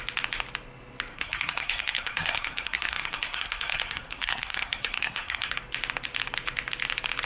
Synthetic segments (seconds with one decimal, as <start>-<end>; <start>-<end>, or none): 1.1-5.5